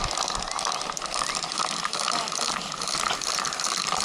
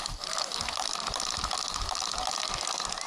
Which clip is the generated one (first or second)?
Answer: second